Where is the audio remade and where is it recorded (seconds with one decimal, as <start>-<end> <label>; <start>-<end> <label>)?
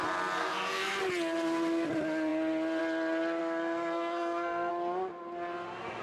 0.0-0.4 recorded; 0.4-1.0 remade; 1.0-3.4 recorded; 3.4-4.7 remade; 4.7-6.0 recorded